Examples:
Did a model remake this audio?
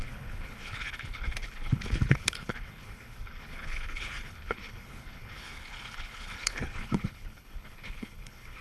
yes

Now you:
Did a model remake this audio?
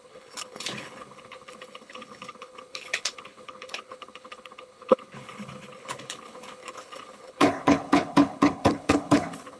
yes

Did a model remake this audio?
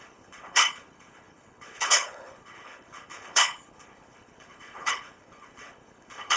yes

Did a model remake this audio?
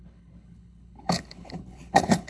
yes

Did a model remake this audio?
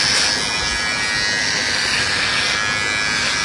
no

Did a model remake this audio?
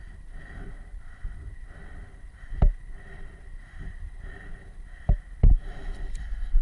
no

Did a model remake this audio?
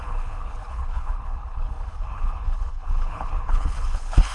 yes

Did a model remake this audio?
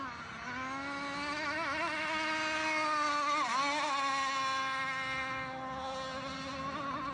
no